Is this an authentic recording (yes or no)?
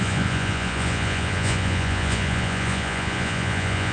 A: no